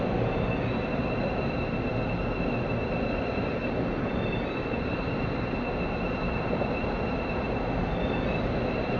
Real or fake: real